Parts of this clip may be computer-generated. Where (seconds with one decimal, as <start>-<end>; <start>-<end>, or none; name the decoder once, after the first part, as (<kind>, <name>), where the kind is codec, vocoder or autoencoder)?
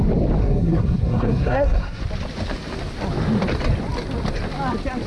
0.4-2.0 (codec, SNAC)